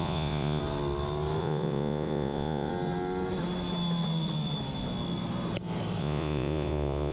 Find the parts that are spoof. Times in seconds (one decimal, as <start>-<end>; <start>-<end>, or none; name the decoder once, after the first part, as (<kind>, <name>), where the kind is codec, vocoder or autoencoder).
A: 0.0-0.6 (vocoder, Vocos); 1.4-2.7; 6.0-7.1